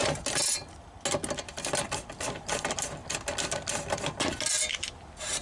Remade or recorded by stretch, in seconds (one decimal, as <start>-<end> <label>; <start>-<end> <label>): 0.0-5.4 recorded